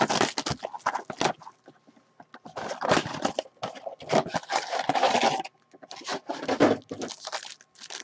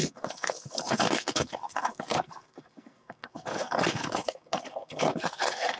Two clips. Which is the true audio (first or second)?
first